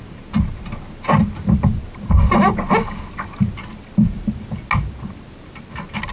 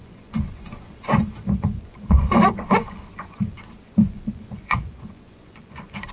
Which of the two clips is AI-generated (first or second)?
second